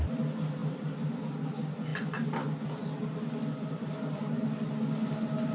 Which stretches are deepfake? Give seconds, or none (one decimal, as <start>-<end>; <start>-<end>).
none